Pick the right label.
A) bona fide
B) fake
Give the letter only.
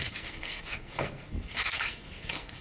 B